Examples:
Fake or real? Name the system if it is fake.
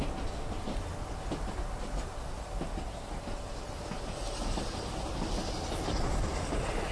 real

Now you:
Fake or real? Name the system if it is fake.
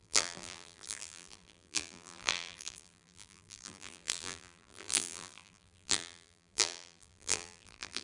fake, vocoder, BigVGAN v2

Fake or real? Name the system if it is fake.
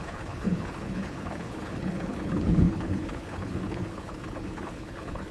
fake, codec, HILCodec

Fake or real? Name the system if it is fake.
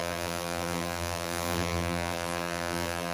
fake, vocoder, BigVGAN v2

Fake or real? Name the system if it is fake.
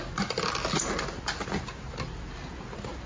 real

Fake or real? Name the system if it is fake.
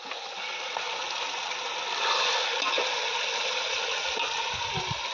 real